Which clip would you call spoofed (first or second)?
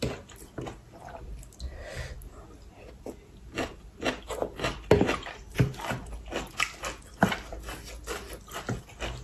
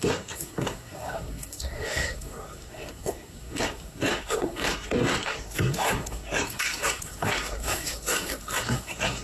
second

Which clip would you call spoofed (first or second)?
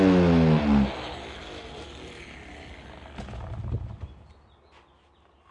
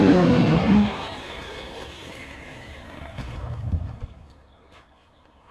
second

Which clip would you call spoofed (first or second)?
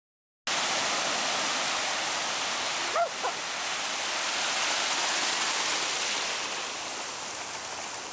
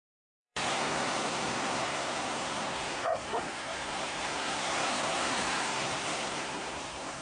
second